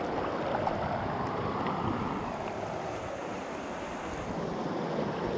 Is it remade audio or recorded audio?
recorded